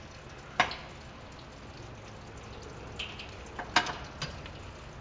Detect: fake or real real